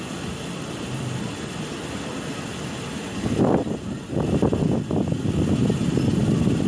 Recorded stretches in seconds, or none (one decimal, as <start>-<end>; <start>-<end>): 0.0-6.7

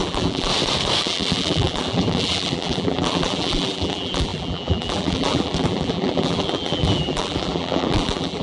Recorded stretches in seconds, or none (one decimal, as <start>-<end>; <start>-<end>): 0.5-1.0

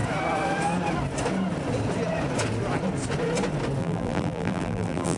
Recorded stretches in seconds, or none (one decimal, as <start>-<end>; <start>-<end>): 0.0-3.8

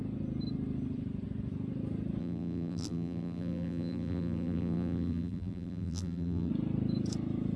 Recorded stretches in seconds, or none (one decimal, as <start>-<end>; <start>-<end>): 0.0-2.2; 6.5-7.6

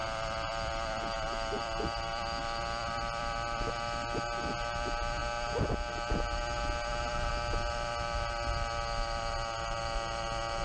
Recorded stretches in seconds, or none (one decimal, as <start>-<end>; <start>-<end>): 3.7-10.6